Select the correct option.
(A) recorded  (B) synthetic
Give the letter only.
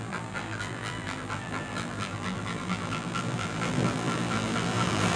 B